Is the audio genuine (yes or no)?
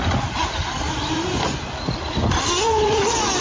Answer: yes